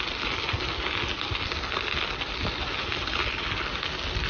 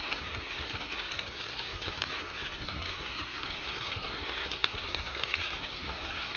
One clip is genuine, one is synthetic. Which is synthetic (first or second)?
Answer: second